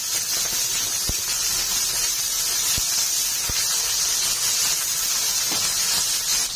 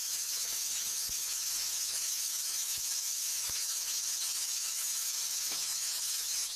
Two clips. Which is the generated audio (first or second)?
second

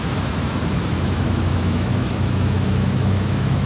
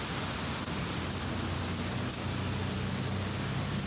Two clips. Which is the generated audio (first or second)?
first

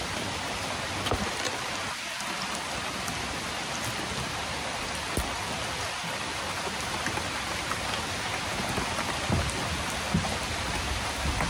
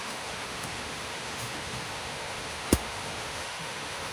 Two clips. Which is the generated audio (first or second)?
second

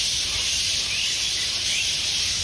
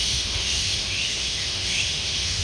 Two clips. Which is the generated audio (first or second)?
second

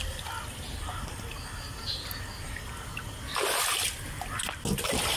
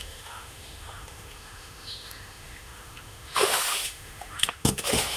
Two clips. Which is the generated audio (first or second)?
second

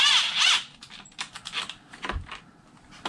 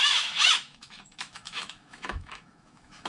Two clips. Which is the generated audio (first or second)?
second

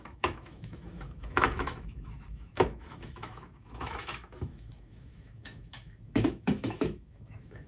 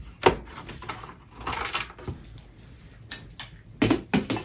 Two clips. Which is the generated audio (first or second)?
first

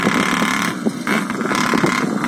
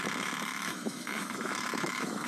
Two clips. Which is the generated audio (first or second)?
second